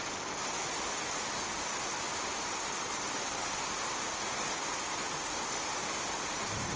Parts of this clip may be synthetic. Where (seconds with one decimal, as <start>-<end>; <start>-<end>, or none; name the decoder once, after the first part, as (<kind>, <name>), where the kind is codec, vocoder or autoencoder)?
5.8-6.8 (vocoder, BigVGAN v2)